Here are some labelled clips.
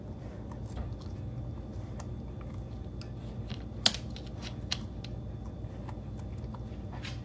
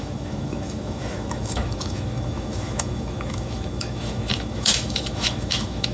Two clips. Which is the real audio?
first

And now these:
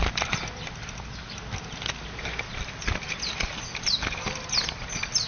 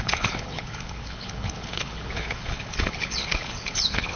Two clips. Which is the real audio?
first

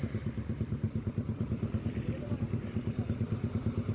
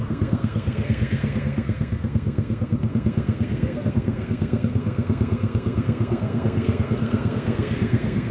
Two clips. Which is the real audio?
first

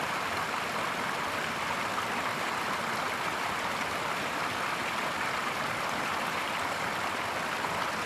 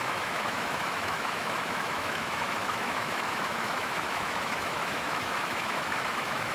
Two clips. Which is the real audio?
first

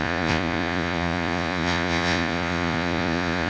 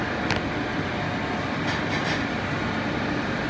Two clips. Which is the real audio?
second